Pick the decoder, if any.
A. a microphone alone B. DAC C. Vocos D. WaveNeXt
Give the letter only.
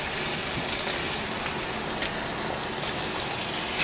A